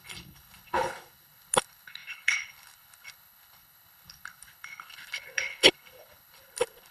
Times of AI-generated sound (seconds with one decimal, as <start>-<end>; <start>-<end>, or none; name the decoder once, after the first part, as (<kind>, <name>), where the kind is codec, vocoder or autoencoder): 0.0-6.9 (codec, HILCodec)

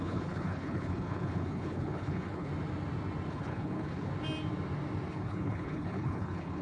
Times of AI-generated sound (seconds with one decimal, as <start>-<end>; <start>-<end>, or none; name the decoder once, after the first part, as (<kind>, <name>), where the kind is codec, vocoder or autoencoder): 0.0-2.5 (codec, HILCodec); 3.3-4.1; 5.1-6.6